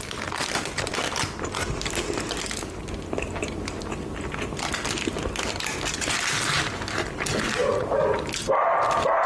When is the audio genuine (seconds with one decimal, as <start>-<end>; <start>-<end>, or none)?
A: 0.0-9.3